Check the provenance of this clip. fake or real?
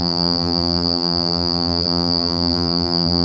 fake